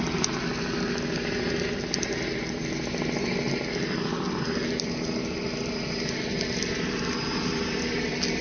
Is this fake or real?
real